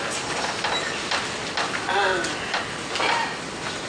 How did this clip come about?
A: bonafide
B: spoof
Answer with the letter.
A